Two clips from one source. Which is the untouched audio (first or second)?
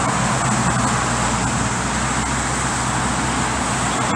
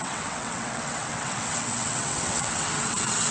first